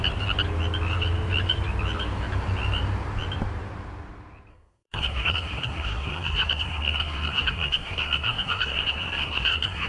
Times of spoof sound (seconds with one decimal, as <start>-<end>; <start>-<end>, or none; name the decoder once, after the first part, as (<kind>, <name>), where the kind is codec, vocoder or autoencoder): 4.5-9.9 (codec, SNAC)